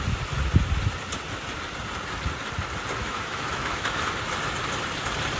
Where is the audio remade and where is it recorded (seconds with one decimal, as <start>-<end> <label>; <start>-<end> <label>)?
0.0-3.0 recorded; 3.0-4.0 remade; 4.0-5.4 recorded